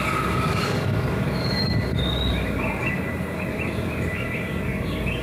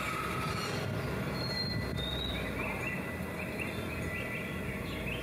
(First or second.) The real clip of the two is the second